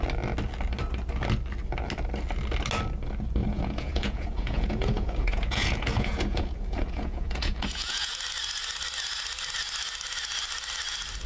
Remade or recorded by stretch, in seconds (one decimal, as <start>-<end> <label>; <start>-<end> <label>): 0.0-3.4 recorded; 3.4-8.1 remade; 8.1-11.3 recorded